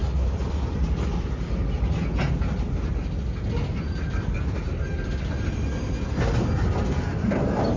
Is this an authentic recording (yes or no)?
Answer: yes